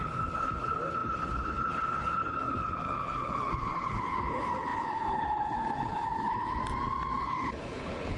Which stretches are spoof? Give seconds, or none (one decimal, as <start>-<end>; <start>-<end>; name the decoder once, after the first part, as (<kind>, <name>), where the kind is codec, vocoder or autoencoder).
0.0-6.6 (codec, HILCodec); 7.2-8.2